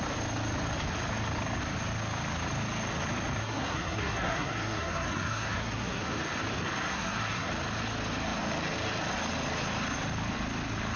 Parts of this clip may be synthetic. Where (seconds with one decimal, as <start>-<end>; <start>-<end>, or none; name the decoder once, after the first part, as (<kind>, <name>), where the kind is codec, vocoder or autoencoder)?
3.4-6.0 (codec, SNAC); 6.9-7.5